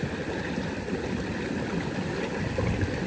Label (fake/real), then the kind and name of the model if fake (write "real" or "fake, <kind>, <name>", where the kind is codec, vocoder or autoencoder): real